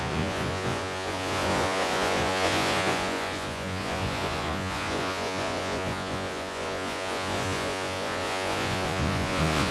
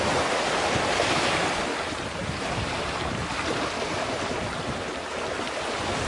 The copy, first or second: first